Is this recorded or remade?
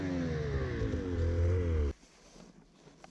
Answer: recorded